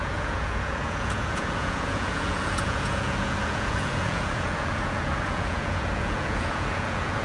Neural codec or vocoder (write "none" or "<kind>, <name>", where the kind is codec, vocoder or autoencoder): vocoder, Vocos